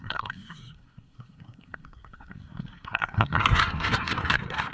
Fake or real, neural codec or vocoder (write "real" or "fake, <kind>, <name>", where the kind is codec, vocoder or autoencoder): fake, codec, SNAC